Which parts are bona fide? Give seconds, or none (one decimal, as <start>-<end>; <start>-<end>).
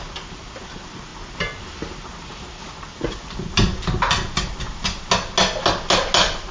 0.0-6.5